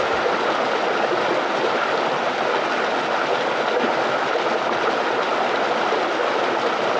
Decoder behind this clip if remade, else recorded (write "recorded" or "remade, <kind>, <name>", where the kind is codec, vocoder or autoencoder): recorded